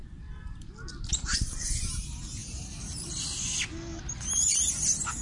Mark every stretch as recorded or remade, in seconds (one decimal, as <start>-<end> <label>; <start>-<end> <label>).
0.0-0.7 remade; 0.7-1.1 recorded; 1.1-1.8 remade; 1.8-2.4 recorded; 2.4-3.1 remade; 3.1-3.9 recorded; 3.9-4.7 remade; 4.7-5.2 recorded